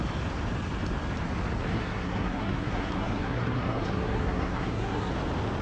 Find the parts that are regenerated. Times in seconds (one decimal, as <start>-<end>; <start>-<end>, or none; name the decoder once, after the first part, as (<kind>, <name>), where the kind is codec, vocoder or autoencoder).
1.7-5.1 (codec, SNAC)